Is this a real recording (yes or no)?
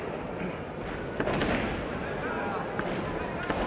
yes